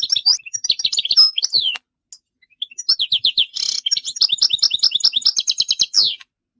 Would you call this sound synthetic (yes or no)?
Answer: no